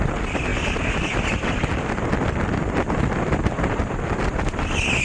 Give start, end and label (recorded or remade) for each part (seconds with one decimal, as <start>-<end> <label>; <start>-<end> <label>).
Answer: 0.0-5.0 recorded